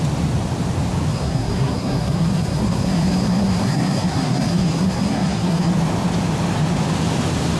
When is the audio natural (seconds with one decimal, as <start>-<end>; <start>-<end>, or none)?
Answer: 0.0-1.1; 5.7-7.6